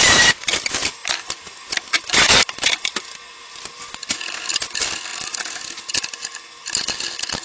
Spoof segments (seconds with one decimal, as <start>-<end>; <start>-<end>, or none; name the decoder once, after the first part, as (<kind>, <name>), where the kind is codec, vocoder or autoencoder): none